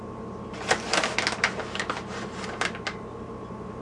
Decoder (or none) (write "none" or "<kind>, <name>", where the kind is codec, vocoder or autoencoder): none